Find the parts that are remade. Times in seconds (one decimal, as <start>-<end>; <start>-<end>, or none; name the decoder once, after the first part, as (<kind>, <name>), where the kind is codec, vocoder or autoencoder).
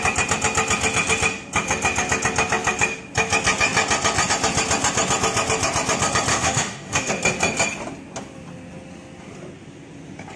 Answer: 6.3-7.1 (autoencoder, DAC-VAE)